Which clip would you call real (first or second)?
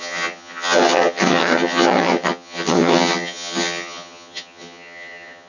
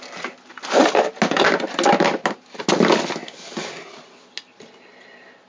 second